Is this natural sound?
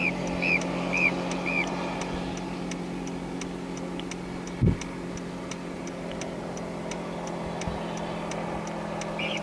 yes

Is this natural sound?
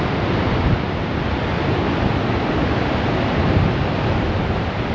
yes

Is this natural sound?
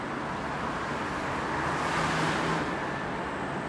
yes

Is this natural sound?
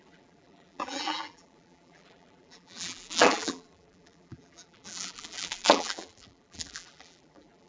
no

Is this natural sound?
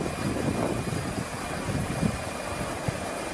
no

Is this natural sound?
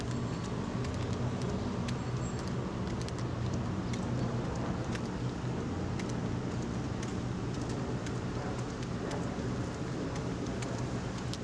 yes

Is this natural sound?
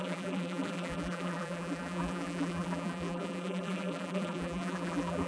no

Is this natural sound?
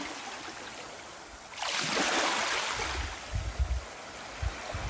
yes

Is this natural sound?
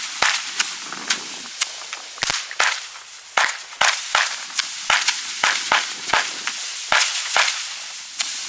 yes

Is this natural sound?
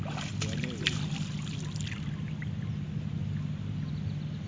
no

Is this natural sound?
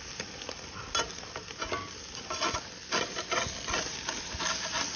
yes